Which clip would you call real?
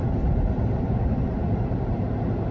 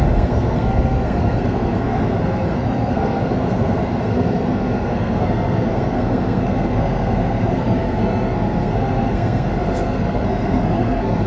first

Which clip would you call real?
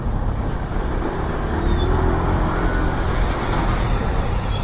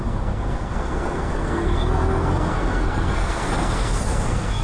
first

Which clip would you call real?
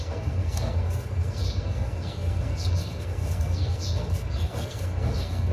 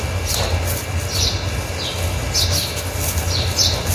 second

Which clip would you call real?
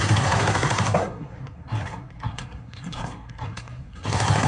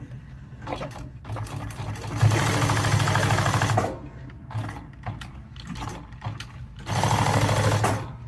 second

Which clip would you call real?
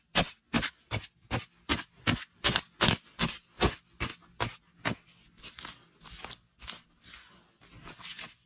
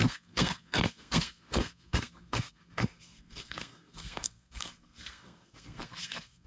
first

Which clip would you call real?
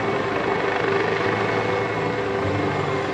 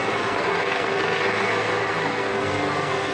first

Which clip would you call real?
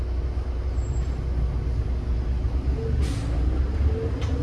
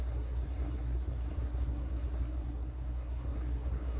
first